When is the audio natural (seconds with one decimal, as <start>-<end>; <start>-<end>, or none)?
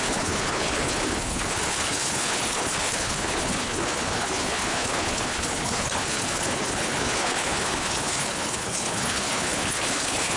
none